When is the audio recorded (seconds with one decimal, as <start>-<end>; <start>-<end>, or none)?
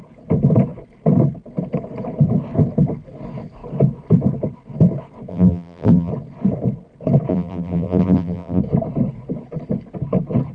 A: 0.0-5.3; 6.1-7.3; 8.6-10.5